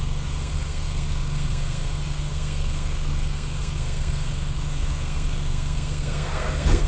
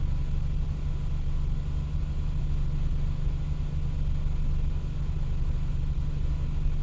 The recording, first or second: second